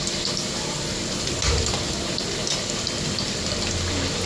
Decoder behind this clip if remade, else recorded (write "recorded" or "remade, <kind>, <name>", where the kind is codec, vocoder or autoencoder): recorded